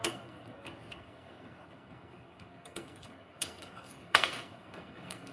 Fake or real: fake